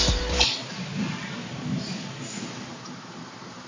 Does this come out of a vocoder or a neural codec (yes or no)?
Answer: no